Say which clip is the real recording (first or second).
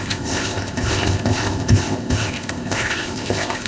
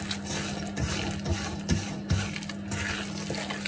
second